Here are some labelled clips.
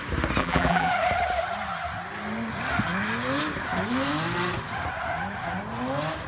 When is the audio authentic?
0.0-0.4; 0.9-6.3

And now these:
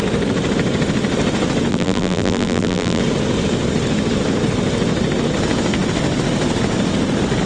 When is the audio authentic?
0.0-1.7; 3.0-7.5

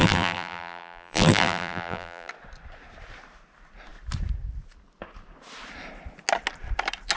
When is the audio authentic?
2.3-7.2